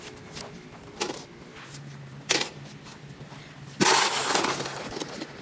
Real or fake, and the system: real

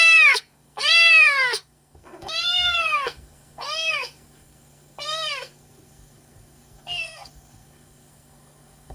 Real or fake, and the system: fake, codec, SNAC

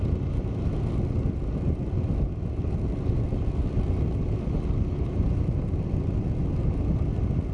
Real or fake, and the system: real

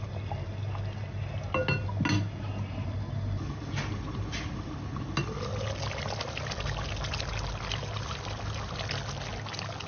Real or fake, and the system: real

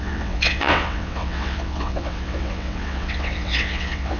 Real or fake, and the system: fake, vocoder, WaveNeXt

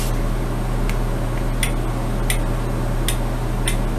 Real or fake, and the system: real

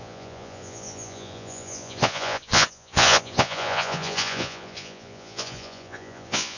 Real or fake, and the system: fake, vocoder, Vocos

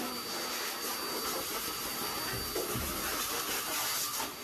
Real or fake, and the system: real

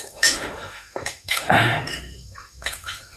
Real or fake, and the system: fake, autoencoder, DAC-VAE